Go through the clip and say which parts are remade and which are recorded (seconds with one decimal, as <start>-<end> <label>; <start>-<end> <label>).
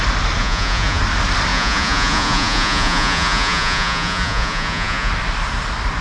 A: 0.0-0.4 recorded; 0.4-1.0 remade; 1.0-1.5 recorded; 1.5-5.1 remade; 5.1-6.0 recorded